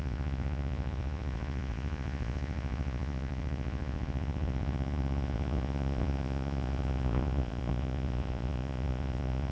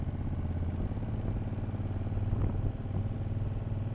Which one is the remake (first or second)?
first